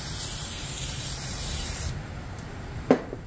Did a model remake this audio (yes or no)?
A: yes